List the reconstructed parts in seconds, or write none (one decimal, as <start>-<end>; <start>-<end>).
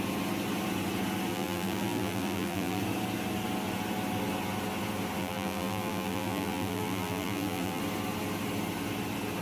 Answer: 1.3-2.8; 5.2-7.8